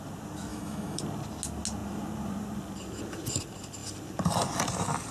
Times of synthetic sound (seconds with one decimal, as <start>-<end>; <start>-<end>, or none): 0.5-1.0